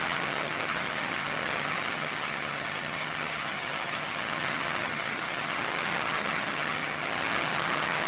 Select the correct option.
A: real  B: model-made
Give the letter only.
B